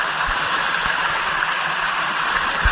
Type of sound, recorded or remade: recorded